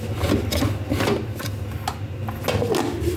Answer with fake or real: real